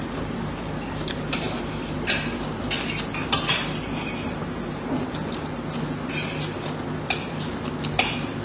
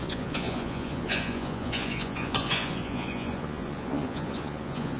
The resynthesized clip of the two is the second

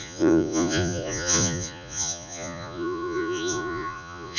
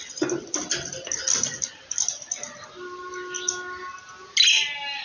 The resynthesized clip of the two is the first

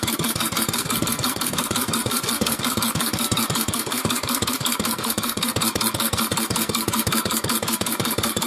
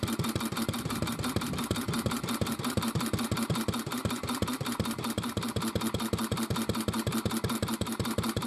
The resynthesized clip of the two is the first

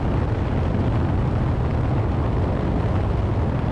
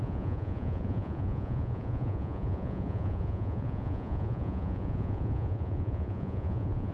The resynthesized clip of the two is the second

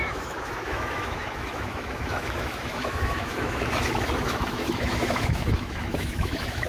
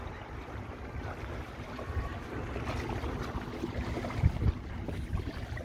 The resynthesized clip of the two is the first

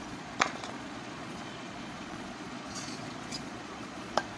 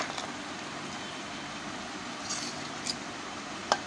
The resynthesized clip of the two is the first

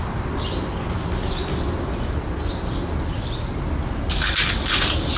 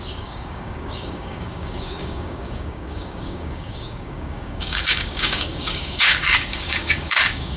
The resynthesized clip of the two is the second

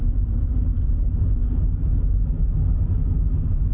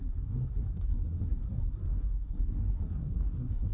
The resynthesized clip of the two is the second